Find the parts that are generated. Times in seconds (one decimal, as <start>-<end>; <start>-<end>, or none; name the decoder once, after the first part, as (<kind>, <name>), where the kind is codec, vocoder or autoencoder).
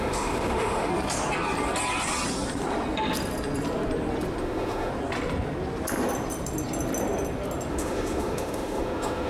0.0-0.9 (autoencoder, DAC-VAE); 4.4-4.9; 7.7-9.3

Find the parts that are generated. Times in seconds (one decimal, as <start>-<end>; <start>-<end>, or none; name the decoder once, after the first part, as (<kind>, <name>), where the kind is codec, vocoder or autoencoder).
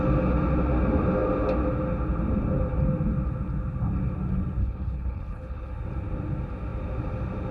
4.6-5.7 (codec, HILCodec)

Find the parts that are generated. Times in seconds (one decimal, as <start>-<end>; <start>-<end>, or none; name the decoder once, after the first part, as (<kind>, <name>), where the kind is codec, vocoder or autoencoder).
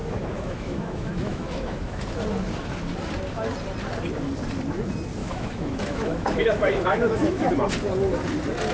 0.0-2.0 (autoencoder, DAC-VAE); 5.2-7.5